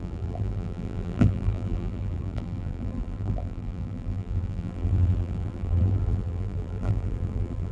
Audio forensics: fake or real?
fake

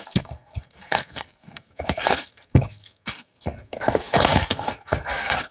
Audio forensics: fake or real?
fake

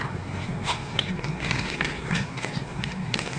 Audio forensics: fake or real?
fake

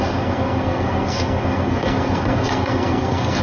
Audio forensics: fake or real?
fake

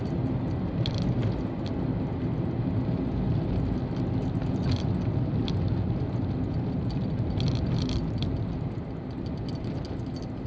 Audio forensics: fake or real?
real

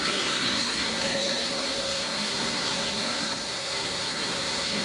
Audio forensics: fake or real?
fake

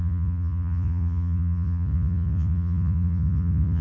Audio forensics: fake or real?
fake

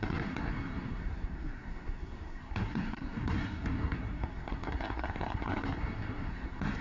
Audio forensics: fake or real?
fake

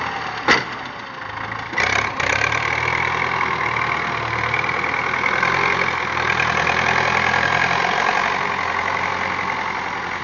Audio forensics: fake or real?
real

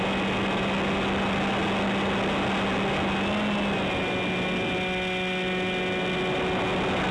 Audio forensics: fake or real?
real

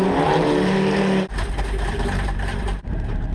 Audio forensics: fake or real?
fake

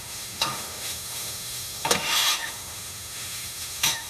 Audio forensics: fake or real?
fake